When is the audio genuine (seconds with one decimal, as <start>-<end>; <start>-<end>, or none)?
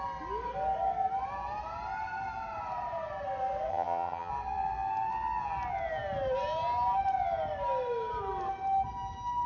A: 0.0-3.7; 4.3-9.5